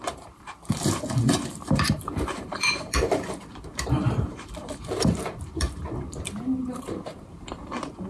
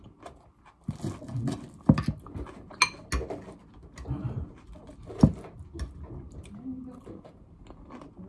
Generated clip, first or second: first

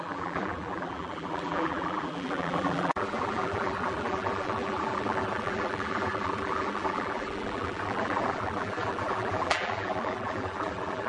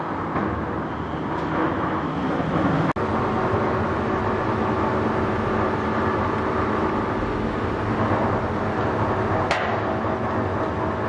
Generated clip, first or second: first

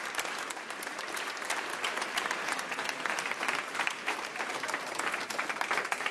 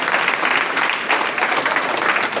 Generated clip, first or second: first